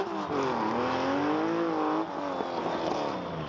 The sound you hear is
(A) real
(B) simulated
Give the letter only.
A